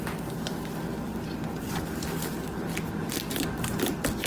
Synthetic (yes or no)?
no